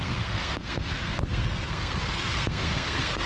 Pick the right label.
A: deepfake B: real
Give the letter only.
A